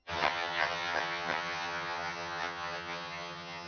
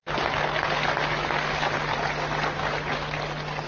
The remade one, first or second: first